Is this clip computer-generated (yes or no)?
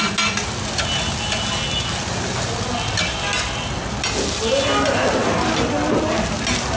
no